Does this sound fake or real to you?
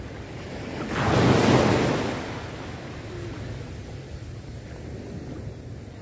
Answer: real